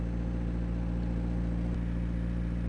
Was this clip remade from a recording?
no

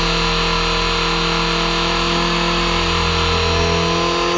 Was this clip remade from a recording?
no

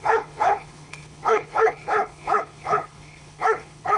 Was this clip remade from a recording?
yes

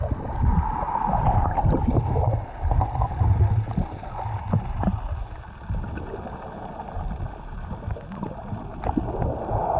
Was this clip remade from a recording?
no